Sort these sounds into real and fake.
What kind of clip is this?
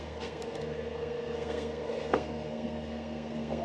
fake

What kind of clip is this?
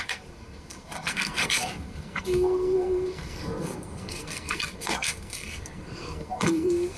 fake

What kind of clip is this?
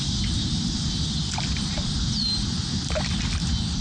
real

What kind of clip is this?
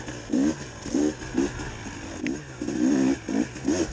real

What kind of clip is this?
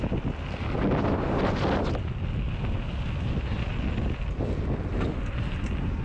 real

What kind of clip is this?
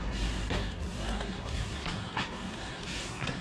fake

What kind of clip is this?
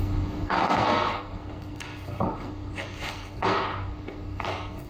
fake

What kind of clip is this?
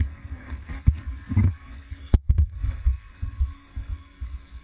fake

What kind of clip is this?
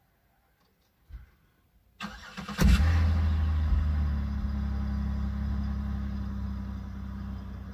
real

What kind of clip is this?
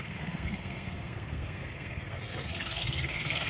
fake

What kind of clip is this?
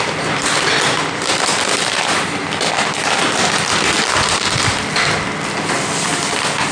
real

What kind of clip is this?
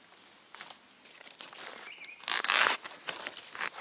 real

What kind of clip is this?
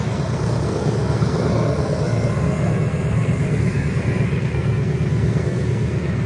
fake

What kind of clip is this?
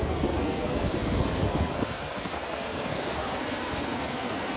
fake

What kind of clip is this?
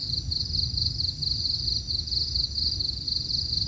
real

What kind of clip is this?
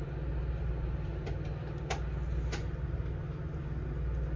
real